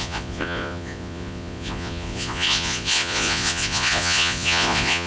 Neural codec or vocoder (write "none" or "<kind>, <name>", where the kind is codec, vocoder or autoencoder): vocoder, Vocos